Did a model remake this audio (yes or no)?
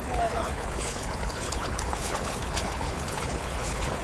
yes